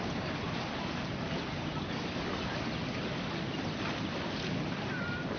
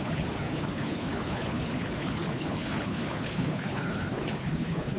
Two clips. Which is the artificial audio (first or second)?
second